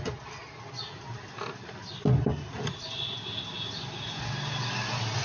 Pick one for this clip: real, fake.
real